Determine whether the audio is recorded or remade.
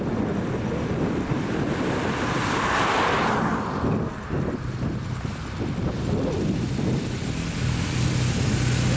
recorded